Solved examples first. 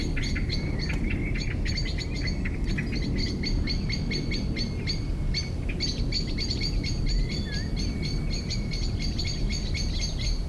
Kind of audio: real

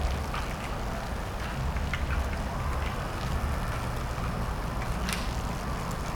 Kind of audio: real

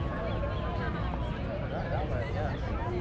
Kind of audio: real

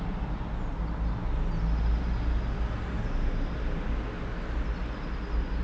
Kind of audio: real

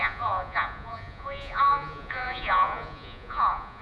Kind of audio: fake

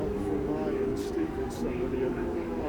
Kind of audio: fake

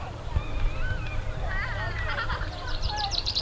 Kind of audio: fake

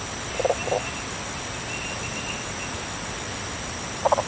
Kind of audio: real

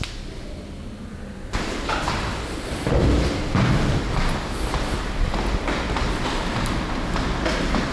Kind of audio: fake